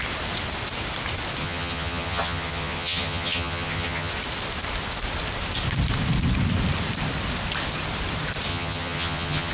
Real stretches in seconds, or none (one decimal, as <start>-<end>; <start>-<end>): 0.0-1.4; 4.1-8.5